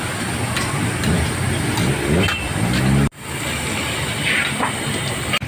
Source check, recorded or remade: recorded